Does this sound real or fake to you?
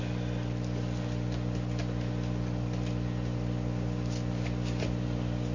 real